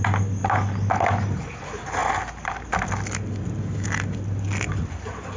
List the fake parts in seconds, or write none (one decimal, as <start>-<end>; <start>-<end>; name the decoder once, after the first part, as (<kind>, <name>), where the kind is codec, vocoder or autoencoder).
none